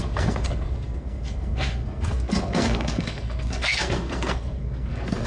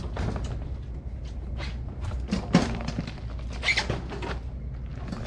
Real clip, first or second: second